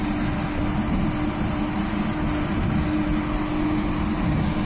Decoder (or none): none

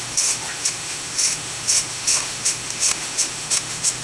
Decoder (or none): autoencoder, DAC-VAE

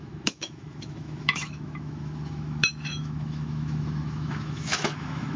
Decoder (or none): autoencoder, DAC-VAE